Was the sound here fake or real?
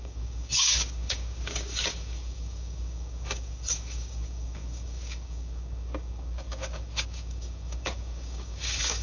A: fake